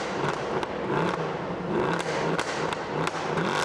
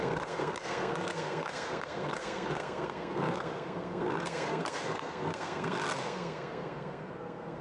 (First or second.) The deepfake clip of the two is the second